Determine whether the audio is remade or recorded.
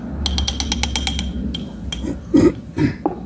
recorded